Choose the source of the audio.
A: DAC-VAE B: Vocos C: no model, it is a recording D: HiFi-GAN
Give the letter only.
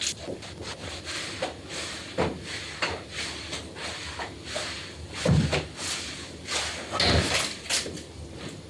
C